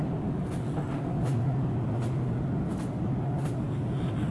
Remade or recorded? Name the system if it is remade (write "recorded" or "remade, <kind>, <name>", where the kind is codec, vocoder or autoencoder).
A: recorded